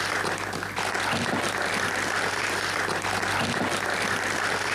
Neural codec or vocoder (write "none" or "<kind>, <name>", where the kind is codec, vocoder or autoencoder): none